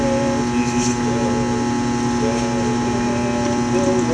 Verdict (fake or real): real